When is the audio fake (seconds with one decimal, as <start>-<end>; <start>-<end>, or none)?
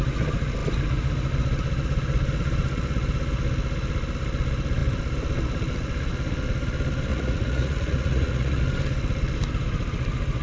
7.1-8.6